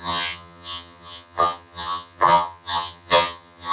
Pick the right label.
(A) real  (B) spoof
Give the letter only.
B